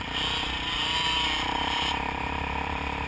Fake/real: fake